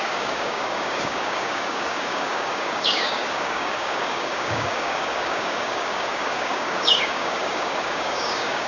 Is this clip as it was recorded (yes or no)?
no